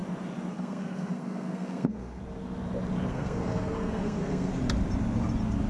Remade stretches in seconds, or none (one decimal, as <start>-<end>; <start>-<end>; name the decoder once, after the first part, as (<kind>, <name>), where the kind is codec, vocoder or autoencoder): 0.5-2.2 (codec, SNAC); 3.1-4.5